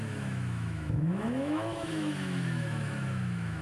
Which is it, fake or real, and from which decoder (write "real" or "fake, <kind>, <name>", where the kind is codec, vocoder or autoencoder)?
fake, autoencoder, DAC-VAE